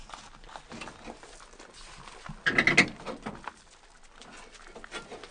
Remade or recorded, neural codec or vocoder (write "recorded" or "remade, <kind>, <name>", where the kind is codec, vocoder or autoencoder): recorded